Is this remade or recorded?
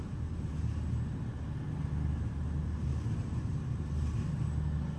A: recorded